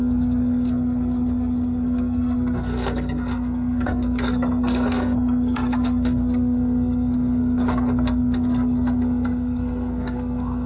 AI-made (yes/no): yes